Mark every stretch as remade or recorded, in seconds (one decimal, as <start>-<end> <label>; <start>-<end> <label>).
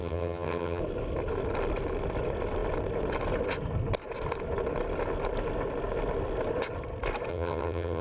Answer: 0.0-0.8 remade; 0.8-7.3 recorded; 7.3-8.0 remade